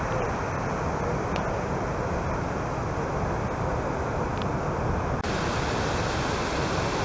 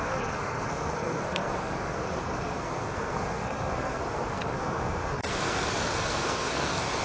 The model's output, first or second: second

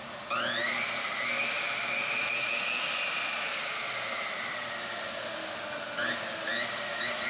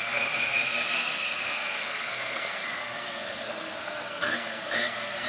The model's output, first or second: second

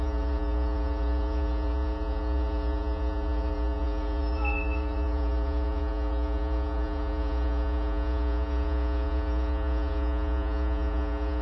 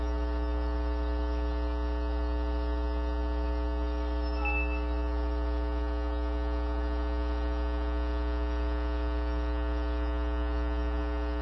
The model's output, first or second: first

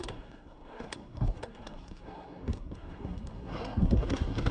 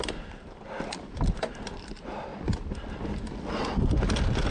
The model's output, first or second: first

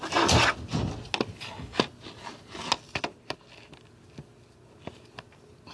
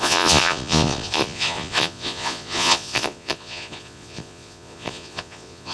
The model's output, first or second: second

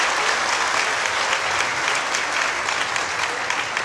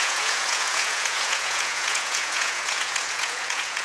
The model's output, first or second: second